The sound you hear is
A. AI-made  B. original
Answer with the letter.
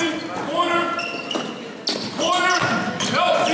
B